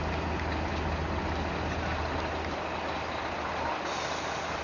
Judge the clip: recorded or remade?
recorded